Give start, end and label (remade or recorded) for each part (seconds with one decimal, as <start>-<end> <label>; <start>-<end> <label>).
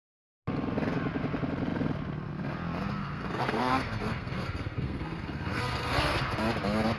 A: 0.0-3.0 recorded; 3.0-6.4 remade; 6.4-7.0 recorded